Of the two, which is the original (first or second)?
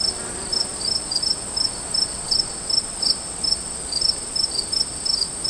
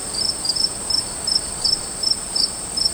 first